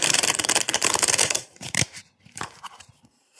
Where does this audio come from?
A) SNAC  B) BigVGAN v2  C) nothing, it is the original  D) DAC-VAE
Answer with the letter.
B